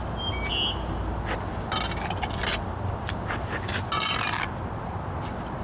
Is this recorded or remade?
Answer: recorded